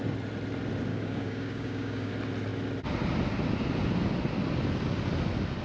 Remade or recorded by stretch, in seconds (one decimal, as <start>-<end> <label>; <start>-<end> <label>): 0.0-0.9 recorded; 0.9-2.1 remade; 2.1-5.6 recorded